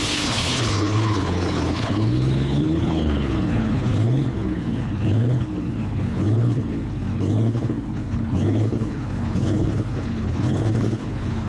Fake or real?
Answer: fake